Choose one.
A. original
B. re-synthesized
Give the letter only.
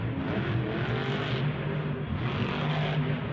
A